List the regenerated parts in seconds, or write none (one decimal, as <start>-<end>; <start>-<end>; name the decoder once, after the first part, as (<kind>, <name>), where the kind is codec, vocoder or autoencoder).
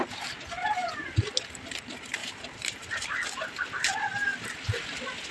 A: 0.8-1.3 (vocoder, BigVGAN v2); 2.2-3.1